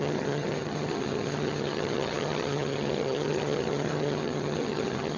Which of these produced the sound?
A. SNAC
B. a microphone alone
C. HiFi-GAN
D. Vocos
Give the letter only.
C